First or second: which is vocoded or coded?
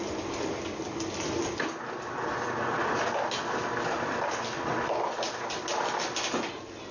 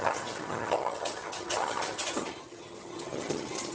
second